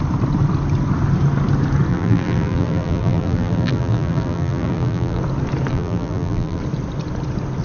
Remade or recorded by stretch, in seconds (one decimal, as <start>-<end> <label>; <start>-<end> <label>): 0.0-1.9 recorded; 1.9-5.2 remade; 5.2-5.7 recorded; 5.7-6.6 remade; 6.6-7.6 recorded